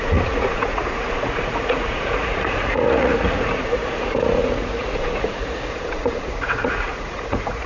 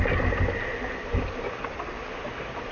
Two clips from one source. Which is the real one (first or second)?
second